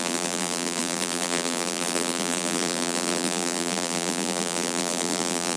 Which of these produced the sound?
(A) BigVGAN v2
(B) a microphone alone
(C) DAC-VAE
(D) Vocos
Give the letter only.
A